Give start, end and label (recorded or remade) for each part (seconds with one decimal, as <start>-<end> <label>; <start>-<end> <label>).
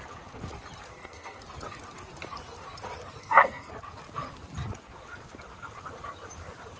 0.0-0.9 recorded; 0.9-1.4 remade; 1.4-3.2 recorded; 3.2-3.7 remade; 3.7-6.8 recorded